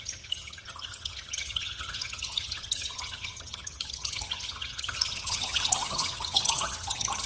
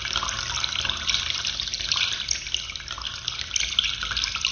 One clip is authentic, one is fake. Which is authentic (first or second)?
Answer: second